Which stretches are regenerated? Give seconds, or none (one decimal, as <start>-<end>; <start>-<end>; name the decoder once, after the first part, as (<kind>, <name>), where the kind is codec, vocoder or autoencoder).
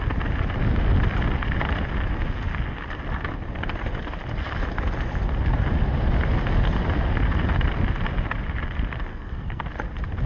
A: 9.1-9.6 (codec, SNAC)